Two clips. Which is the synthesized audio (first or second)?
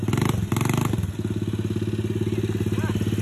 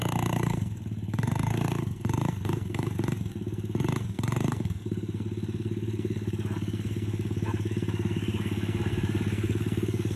second